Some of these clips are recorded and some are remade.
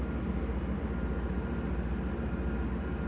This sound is recorded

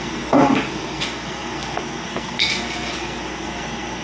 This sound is remade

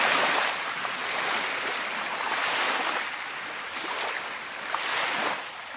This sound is recorded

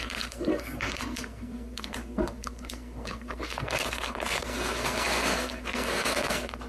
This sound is remade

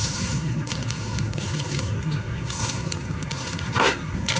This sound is remade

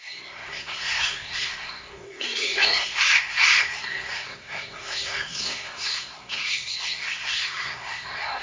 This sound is remade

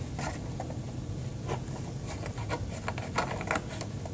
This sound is recorded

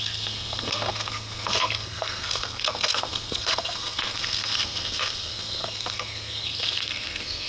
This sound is remade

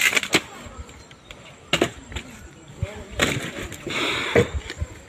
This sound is recorded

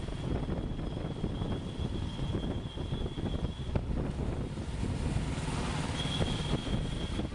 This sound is recorded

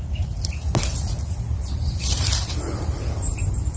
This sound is recorded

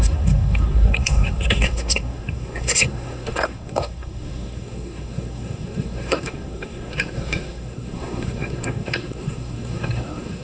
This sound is remade